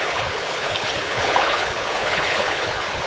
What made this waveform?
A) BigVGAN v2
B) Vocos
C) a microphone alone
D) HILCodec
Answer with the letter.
D